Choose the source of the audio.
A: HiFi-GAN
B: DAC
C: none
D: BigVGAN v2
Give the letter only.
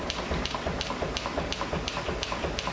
D